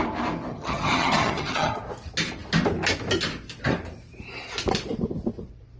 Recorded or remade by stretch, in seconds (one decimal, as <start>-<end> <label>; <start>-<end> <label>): 0.0-0.5 recorded; 0.5-1.8 remade; 1.8-5.8 recorded